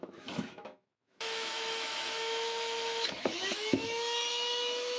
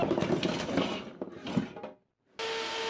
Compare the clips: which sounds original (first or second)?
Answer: second